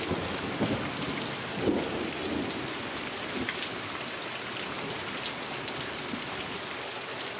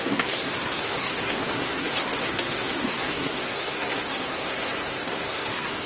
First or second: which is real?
first